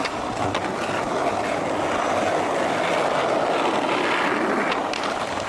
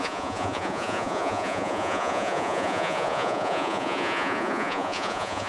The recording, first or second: first